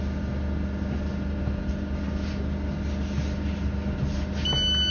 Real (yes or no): yes